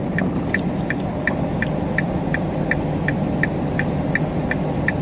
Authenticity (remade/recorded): recorded